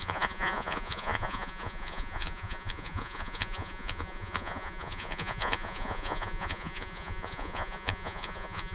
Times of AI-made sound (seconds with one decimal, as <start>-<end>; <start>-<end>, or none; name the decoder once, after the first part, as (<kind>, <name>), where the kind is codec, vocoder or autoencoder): 0.0-8.7 (vocoder, Vocos)